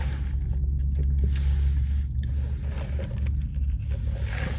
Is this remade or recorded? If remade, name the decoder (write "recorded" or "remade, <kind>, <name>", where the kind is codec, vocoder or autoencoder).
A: recorded